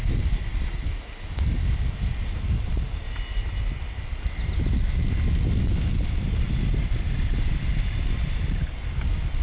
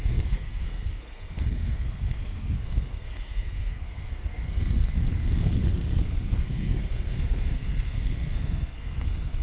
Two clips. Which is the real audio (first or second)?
first